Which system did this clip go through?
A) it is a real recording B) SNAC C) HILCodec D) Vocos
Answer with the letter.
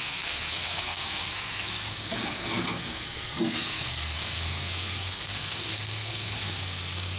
B